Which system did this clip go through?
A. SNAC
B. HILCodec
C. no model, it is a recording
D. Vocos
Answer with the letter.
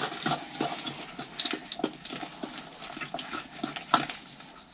C